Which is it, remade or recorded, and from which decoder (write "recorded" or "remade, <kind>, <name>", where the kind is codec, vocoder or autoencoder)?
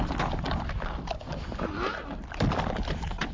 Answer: recorded